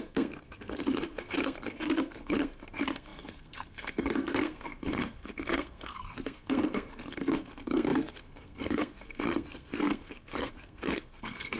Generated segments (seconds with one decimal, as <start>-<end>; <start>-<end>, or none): 0.0-11.6

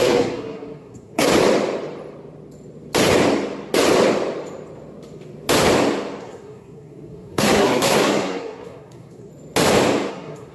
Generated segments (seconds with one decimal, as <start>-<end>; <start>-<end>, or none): 0.0-1.3; 6.2-9.3; 10.1-10.5

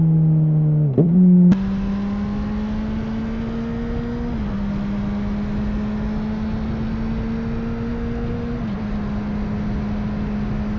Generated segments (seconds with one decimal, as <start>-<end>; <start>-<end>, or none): none

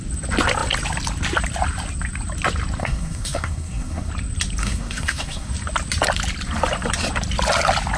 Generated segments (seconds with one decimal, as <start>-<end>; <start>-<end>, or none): 2.8-4.1; 4.6-5.5

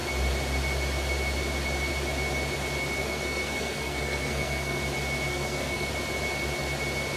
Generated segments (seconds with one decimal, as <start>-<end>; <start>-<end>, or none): 3.0-4.8; 5.3-5.9

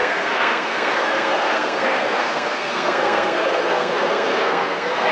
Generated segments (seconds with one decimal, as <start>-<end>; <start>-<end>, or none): 0.0-5.1

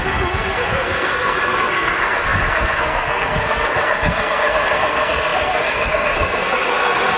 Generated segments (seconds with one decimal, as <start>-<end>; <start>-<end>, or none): 0.0-7.2

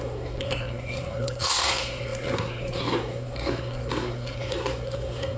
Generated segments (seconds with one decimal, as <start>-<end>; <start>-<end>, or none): 0.0-5.4